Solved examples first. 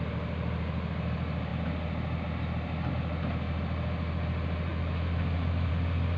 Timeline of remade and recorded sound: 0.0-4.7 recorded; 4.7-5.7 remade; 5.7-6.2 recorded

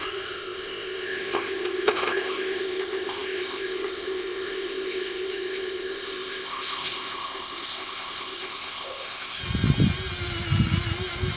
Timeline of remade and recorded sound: 0.0-9.4 remade; 9.4-11.4 recorded

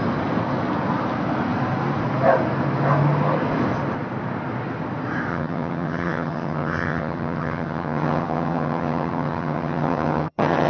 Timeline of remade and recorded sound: 0.0-5.3 recorded; 5.3-10.7 remade